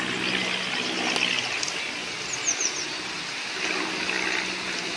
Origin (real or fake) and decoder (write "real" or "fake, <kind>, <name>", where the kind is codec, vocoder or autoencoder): real